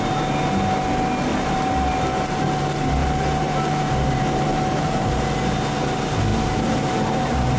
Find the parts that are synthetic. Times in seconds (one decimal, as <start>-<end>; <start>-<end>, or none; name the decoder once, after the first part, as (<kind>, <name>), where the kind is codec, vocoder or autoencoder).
1.3-1.9 (vocoder, BigVGAN v2); 3.0-3.8; 4.5-5.4; 6.3-7.6